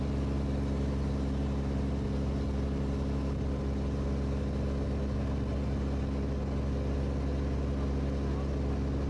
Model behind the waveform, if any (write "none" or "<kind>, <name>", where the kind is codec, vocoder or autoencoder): none